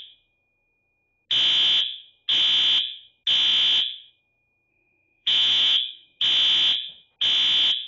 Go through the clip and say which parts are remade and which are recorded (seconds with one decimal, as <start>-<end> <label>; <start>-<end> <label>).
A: 0.0-4.7 recorded; 4.7-6.2 remade; 6.2-7.9 recorded